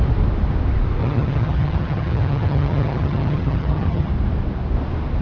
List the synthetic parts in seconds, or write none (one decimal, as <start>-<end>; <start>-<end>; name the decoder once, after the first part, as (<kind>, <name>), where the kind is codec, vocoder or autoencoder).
1.0-4.1 (vocoder, HiFi-GAN)